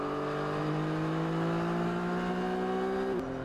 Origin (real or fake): real